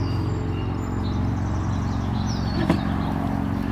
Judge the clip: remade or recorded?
recorded